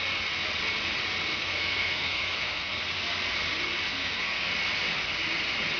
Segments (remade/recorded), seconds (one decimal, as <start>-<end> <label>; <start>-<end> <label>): 0.0-1.3 recorded; 1.3-2.8 remade; 2.8-3.9 recorded; 3.9-4.5 remade; 4.5-5.8 recorded